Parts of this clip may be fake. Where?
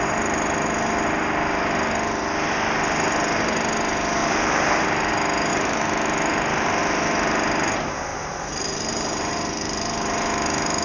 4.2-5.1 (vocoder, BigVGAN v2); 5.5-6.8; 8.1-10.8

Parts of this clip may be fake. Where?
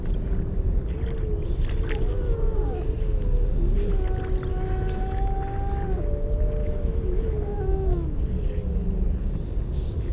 4.5-5.3 (autoencoder, DAC-VAE); 6.6-8.2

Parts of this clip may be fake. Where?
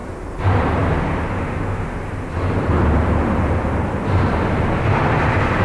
1.3-1.9 (autoencoder, DAC-VAE)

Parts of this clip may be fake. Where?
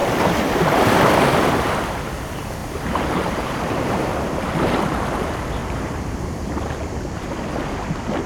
0.0-1.0 (vocoder, BigVGAN v2); 2.6-4.1; 5.6-6.5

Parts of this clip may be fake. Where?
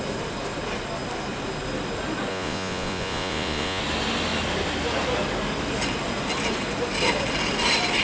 2.3-3.8 (vocoder, Vocos)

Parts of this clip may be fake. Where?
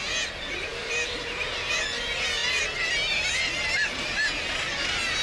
none